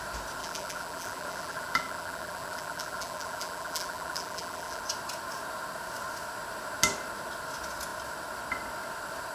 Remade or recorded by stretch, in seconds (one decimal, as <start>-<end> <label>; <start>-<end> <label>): 0.0-0.4 recorded; 0.4-4.8 remade; 4.8-9.3 recorded